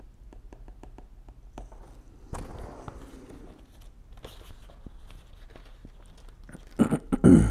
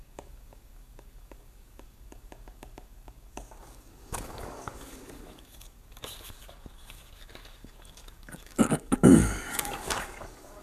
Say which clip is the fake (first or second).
second